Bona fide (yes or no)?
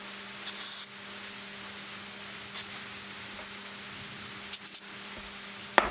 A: yes